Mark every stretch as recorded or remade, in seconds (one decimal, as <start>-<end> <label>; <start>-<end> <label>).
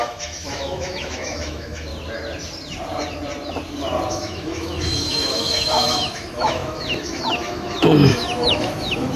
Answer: 0.0-1.9 remade; 1.9-4.1 recorded; 4.1-9.2 remade